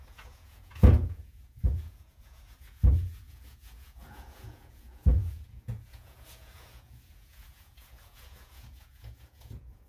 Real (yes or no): no